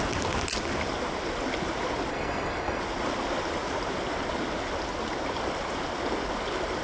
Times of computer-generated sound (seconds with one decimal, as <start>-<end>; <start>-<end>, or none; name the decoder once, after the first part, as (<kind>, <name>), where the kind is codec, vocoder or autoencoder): 2.1-2.8 (codec, SNAC)